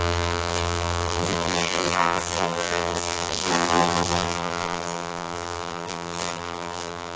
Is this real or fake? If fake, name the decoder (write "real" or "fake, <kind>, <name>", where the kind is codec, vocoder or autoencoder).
fake, vocoder, BigVGAN v2